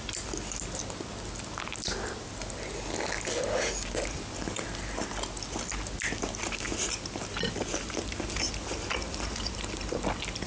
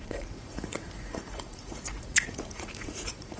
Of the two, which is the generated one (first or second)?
second